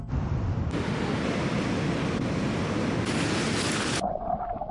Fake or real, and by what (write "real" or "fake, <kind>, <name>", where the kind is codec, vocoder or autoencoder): real